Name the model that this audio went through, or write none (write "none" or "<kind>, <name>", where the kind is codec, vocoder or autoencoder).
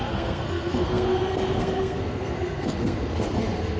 codec, SNAC